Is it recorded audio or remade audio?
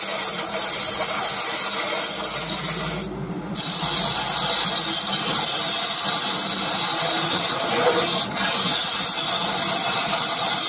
recorded